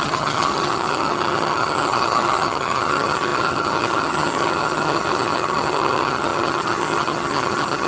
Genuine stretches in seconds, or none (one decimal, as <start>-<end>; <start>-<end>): none